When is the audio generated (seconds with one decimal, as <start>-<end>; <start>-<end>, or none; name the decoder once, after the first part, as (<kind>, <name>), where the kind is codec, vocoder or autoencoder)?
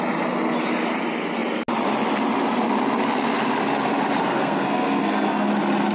4.2-5.5 (codec, SNAC)